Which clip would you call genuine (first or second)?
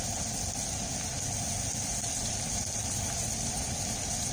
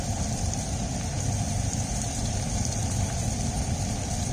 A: first